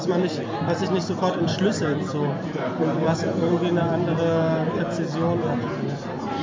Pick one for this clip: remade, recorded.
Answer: recorded